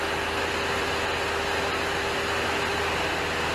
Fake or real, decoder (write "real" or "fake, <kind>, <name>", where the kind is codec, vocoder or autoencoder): real